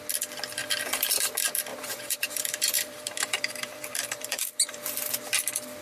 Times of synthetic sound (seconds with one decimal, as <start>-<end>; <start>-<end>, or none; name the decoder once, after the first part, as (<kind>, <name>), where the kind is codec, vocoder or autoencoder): 0.6-1.2 (vocoder, BigVGAN v2); 1.7-5.2